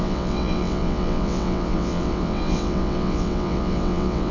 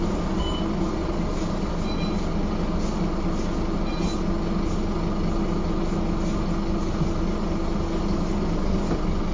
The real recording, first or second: second